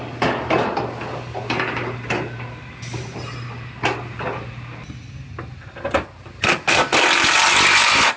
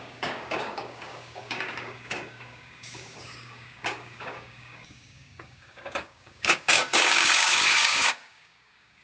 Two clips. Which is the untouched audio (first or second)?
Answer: first